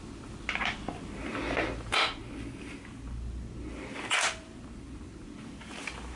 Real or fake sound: real